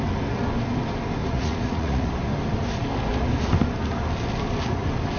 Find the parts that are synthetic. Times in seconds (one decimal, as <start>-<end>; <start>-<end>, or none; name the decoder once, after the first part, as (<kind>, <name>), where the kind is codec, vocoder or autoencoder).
1.2-2.1 (vocoder, Vocos)